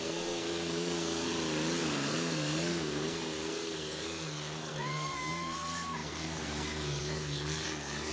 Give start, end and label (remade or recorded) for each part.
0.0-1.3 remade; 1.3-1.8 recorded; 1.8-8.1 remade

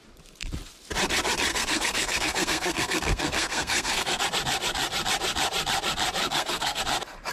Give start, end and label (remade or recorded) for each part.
0.0-1.5 recorded; 1.5-4.2 remade; 4.2-6.2 recorded; 6.2-6.8 remade; 6.8-7.3 recorded

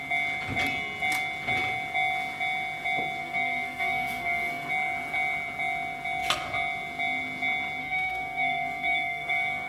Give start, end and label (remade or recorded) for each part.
0.0-3.2 recorded; 3.2-4.7 remade; 4.7-7.8 recorded; 7.8-9.7 remade

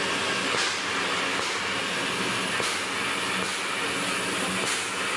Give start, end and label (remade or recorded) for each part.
0.0-5.2 recorded

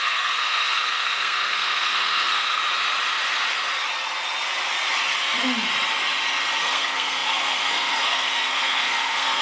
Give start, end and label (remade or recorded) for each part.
0.0-2.6 remade; 2.6-6.6 recorded; 6.6-9.4 remade